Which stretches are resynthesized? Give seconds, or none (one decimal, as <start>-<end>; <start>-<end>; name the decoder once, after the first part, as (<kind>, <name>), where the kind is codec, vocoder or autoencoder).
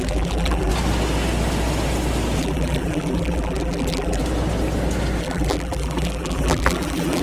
0.0-0.7 (vocoder, BigVGAN v2); 2.4-4.2; 5.2-7.2